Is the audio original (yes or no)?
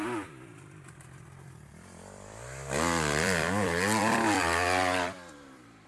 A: no